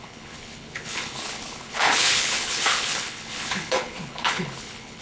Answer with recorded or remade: remade